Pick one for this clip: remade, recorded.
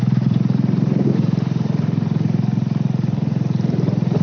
remade